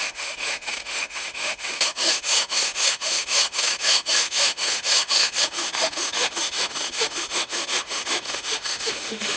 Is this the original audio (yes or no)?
no